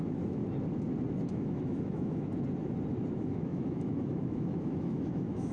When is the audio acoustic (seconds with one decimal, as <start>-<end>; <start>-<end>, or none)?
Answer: 0.4-1.3; 2.3-3.1